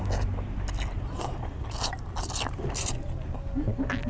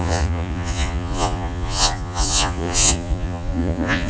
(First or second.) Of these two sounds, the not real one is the second